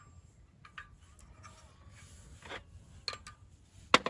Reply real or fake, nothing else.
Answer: real